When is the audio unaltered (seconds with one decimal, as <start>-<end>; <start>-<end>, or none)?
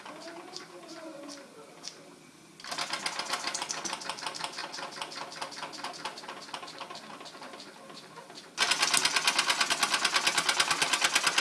0.0-11.4